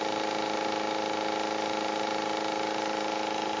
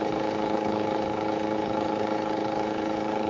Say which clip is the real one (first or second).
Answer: first